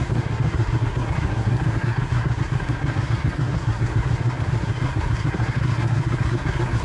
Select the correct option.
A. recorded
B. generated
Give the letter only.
B